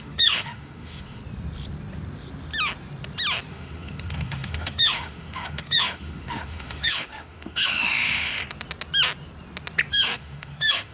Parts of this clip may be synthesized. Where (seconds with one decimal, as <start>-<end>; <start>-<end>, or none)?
0.0-1.2; 3.5-8.4; 9.9-10.9